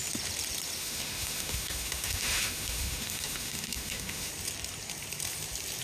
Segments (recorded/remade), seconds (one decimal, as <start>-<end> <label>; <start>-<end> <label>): 0.0-0.8 recorded; 0.8-4.3 remade; 4.3-5.8 recorded